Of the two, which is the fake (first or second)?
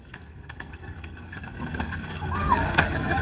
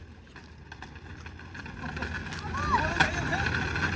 first